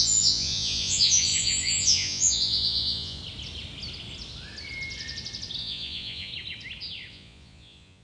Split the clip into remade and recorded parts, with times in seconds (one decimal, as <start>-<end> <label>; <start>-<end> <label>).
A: 0.0-3.2 remade; 3.2-5.6 recorded; 5.6-6.3 remade; 6.3-7.1 recorded; 7.1-8.0 remade